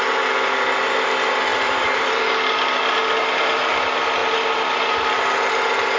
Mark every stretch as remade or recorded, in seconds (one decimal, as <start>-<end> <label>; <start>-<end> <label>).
0.0-1.5 recorded; 1.5-2.3 remade; 2.3-6.0 recorded